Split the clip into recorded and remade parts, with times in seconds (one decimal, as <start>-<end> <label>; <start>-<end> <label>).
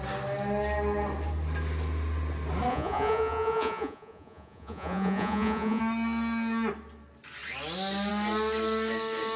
0.0-2.7 recorded; 2.7-5.8 remade; 5.8-9.4 recorded